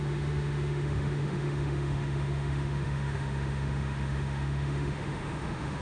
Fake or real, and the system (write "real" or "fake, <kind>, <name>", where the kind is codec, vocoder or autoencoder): fake, autoencoder, DAC-VAE